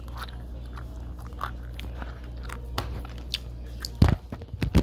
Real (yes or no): yes